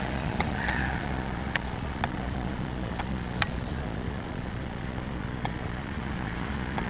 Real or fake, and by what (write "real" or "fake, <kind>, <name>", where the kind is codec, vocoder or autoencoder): fake, vocoder, Vocos